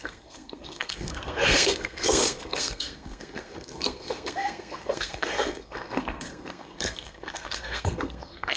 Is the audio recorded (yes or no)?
no